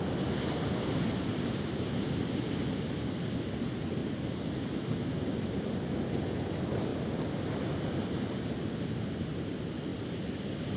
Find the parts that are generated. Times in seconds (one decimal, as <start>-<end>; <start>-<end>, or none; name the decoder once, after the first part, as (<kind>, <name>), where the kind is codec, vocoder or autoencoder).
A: 4.0-4.7 (vocoder, BigVGAN v2); 6.9-7.7; 9.9-10.4